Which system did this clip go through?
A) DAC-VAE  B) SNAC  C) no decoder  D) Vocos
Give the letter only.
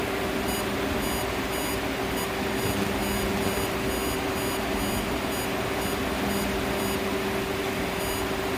C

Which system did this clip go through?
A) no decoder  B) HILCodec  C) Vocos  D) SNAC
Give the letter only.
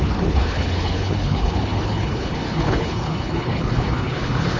B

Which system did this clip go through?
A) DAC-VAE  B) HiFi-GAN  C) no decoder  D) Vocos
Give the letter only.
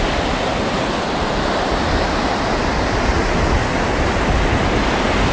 C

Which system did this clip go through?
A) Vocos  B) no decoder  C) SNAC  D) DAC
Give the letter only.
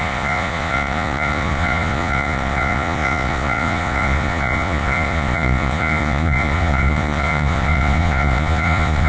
A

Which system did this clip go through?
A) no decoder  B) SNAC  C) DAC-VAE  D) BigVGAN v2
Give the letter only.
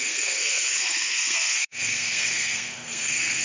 B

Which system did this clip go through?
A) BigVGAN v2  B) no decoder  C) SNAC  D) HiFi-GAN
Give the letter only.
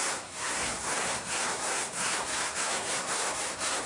C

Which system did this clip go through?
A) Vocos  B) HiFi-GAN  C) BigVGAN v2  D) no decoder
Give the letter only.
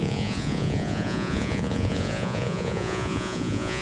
A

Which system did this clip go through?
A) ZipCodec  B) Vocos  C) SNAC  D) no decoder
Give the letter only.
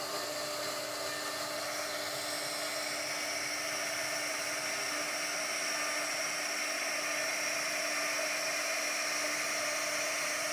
D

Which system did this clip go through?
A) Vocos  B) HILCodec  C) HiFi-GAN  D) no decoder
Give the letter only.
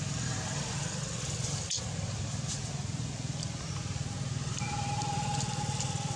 D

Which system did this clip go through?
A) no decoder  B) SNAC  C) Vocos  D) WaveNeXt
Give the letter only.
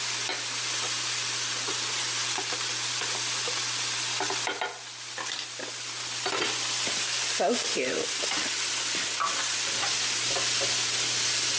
A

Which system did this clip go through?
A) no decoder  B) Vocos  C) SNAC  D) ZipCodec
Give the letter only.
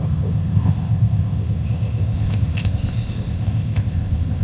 D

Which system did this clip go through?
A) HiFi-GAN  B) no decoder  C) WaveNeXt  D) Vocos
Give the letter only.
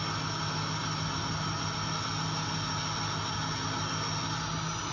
B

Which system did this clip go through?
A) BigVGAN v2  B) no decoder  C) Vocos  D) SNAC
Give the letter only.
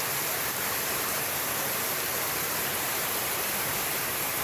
A